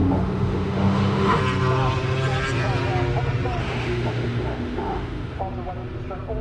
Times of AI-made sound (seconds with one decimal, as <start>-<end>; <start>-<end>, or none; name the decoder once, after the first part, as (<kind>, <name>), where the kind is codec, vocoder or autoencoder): 0.0-1.4 (autoencoder, DAC-VAE); 3.6-5.4